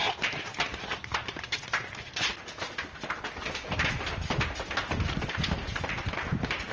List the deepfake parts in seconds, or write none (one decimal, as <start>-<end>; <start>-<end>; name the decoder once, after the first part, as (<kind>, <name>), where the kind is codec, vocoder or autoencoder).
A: none